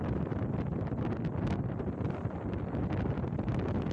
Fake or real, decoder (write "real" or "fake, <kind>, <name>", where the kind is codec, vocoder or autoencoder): real